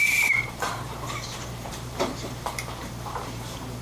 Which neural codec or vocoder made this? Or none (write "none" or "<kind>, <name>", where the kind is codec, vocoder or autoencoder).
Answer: vocoder, BigVGAN v2